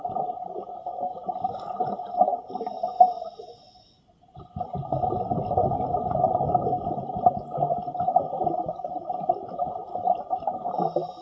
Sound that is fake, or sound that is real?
real